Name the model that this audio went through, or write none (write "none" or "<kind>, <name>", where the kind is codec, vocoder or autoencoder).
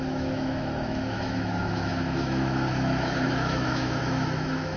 autoencoder, DAC-VAE